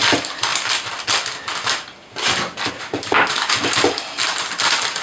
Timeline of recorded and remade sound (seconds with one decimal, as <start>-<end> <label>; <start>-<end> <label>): 0.0-5.0 recorded